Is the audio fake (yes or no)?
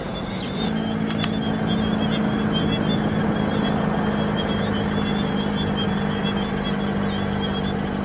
no